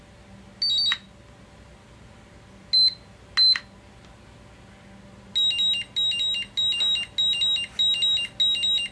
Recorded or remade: recorded